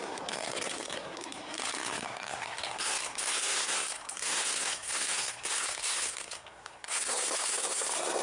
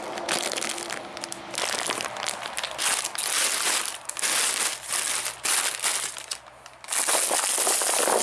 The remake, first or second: first